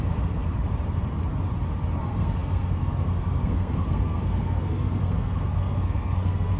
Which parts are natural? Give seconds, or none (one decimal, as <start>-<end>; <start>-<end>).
0.4-2.0